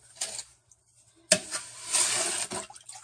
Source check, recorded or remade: recorded